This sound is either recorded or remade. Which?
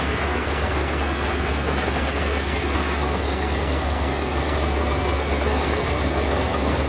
remade